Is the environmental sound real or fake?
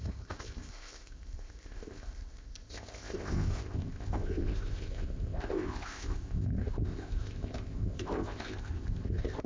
fake